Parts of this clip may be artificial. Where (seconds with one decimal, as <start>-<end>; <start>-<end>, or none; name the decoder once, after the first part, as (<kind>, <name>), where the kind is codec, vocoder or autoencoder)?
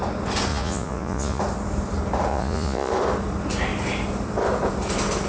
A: 0.5-1.4 (vocoder, Vocos); 2.3-2.9